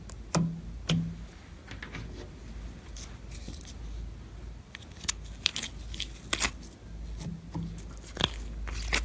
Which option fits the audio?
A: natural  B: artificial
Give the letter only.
A